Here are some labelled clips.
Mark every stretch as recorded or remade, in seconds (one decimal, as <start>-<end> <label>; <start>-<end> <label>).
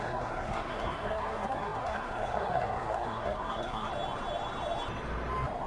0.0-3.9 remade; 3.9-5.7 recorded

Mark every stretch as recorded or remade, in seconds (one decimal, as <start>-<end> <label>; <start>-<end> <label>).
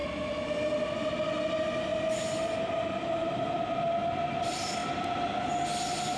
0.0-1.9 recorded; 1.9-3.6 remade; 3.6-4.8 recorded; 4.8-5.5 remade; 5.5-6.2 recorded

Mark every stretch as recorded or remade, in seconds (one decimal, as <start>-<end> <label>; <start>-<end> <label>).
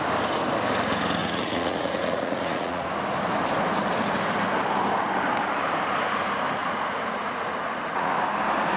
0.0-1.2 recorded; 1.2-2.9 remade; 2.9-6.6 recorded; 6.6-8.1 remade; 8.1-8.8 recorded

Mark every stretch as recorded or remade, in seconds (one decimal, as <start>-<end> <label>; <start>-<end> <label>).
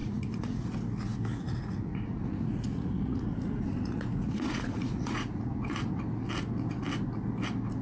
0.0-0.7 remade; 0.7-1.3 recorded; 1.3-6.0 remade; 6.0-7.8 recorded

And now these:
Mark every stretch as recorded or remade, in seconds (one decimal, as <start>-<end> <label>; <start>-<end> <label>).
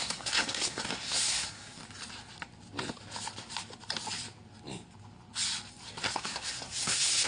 0.0-1.8 remade; 1.8-6.1 recorded; 6.1-7.3 remade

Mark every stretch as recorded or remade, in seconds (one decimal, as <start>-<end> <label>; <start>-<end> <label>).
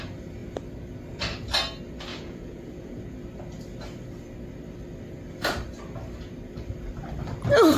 0.0-2.1 recorded; 2.1-3.0 remade; 3.0-7.8 recorded